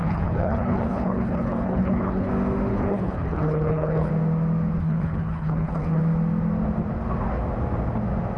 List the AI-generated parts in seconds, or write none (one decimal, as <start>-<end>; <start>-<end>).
0.0-2.3; 2.7-4.1; 4.8-6.0